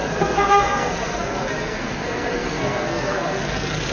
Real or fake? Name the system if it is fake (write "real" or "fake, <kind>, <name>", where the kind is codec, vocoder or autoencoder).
fake, codec, SNAC